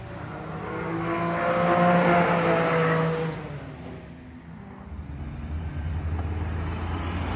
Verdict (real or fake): real